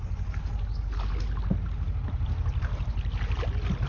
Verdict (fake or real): real